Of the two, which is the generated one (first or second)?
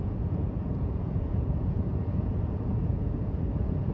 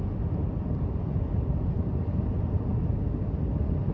first